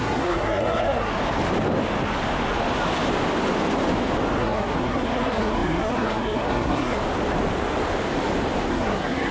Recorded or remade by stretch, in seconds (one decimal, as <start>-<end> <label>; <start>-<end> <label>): 0.0-1.1 remade; 1.1-4.4 recorded; 4.4-7.0 remade; 7.0-8.7 recorded; 8.7-9.3 remade